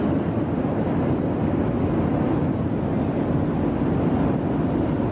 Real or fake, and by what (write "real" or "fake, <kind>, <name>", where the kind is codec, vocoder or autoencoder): real